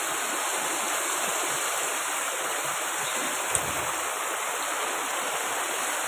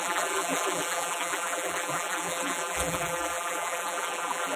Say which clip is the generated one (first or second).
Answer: second